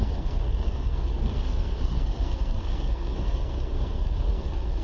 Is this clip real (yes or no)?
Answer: no